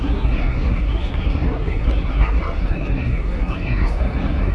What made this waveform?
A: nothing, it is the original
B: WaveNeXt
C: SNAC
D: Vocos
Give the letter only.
C